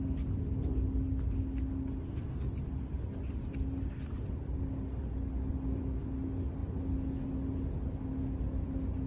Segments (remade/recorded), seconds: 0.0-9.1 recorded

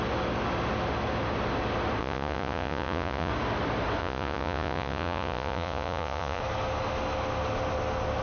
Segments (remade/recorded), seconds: 0.0-2.0 recorded; 2.0-3.3 remade; 3.3-4.0 recorded; 4.0-6.4 remade; 6.4-8.2 recorded

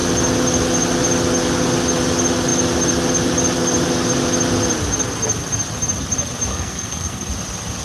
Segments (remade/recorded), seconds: 0.0-6.5 recorded; 6.5-7.3 remade; 7.3-7.8 recorded

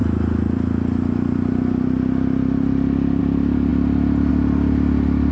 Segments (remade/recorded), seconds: 0.0-5.3 recorded

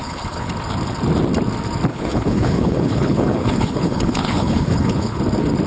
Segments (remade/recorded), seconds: 0.0-0.5 remade; 0.5-1.9 recorded; 1.9-5.2 remade; 5.2-5.7 recorded

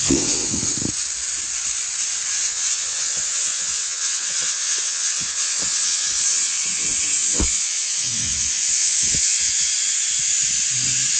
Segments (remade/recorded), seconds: 0.0-0.6 remade; 0.6-2.3 recorded; 2.3-9.7 remade; 9.7-11.2 recorded

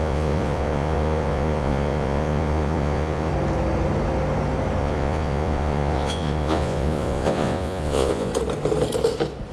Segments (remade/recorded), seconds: 0.0-3.3 remade; 3.3-4.8 recorded; 4.8-8.3 remade; 8.3-9.5 recorded

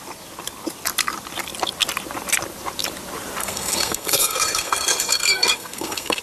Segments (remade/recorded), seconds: 0.0-3.4 recorded; 3.4-6.2 remade